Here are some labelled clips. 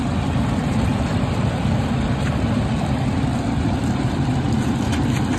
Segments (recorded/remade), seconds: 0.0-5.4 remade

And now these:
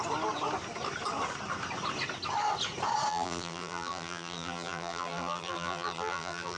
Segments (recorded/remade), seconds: 0.0-3.1 recorded; 3.1-6.6 remade

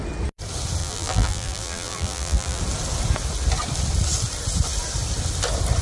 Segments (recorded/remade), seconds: 0.0-0.8 recorded; 0.8-2.6 remade; 2.6-5.8 recorded

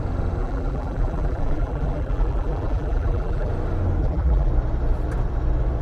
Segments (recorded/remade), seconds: 0.0-0.4 recorded; 0.4-3.5 remade; 3.5-4.0 recorded; 4.0-4.5 remade; 4.5-5.8 recorded

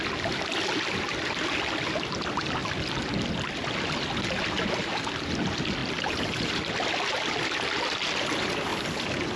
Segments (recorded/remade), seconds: 0.0-5.8 recorded; 5.8-6.6 remade; 6.6-9.4 recorded

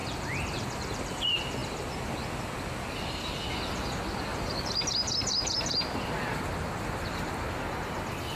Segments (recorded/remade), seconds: 0.0-1.2 remade; 1.2-4.3 recorded; 4.3-7.6 remade; 7.6-8.4 recorded